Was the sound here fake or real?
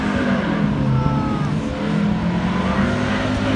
real